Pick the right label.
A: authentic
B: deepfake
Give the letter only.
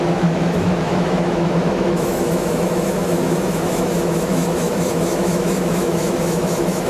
B